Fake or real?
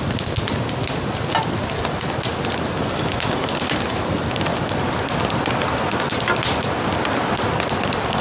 real